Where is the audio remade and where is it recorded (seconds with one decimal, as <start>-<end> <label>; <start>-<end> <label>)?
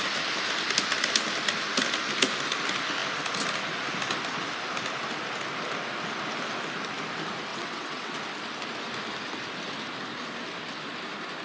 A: 0.0-7.5 recorded; 7.5-8.2 remade; 8.2-11.4 recorded